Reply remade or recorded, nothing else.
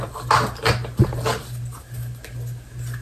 recorded